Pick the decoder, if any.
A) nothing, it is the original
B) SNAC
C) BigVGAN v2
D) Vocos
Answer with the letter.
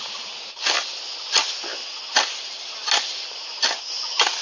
A